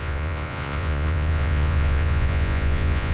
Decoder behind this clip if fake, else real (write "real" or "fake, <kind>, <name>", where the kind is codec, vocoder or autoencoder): fake, vocoder, Vocos